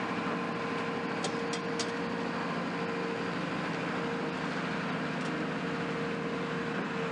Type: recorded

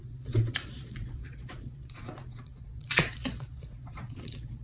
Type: remade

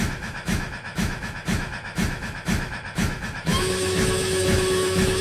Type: remade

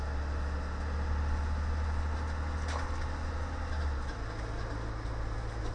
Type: recorded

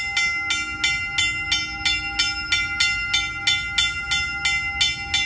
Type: recorded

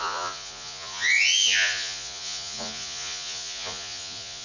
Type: remade